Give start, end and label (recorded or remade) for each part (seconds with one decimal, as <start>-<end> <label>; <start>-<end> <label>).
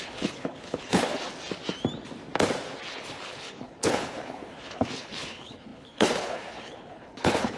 0.0-1.3 remade; 1.3-2.9 recorded; 2.9-7.6 remade